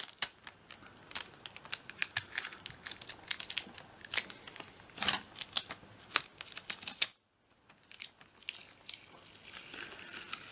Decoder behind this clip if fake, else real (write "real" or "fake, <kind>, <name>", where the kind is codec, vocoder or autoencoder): real